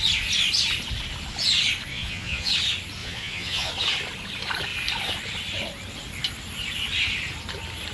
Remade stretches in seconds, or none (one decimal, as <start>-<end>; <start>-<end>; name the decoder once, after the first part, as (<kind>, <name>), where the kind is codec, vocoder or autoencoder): 1.9-2.5 (vocoder, Vocos); 3.0-3.7

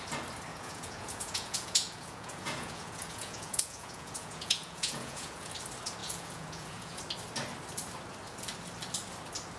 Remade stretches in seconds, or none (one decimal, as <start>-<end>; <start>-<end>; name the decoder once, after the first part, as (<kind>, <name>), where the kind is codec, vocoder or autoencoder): 0.5-5.5 (vocoder, Vocos); 6.0-7.0

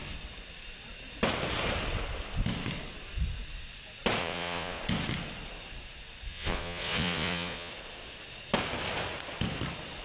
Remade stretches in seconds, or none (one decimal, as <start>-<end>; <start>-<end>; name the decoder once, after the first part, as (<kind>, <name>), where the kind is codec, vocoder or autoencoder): 4.2-4.8 (vocoder, Vocos); 6.3-7.7

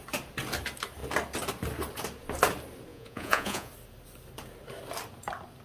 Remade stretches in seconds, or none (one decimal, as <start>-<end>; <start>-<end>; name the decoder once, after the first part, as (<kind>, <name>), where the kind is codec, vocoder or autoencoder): 2.9-3.7 (vocoder, Vocos)